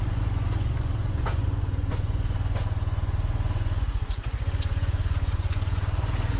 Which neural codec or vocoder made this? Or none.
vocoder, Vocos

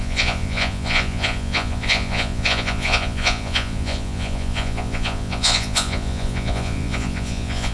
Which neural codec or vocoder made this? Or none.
vocoder, Vocos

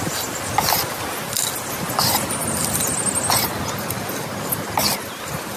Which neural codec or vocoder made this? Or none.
none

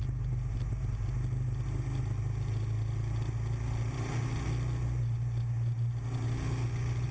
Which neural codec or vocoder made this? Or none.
none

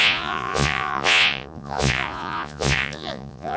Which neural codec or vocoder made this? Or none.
vocoder, Vocos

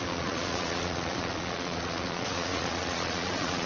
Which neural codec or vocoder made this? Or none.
vocoder, Vocos